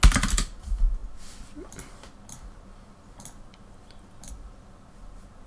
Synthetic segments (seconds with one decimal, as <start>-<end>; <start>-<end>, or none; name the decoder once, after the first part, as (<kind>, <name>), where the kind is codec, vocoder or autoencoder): none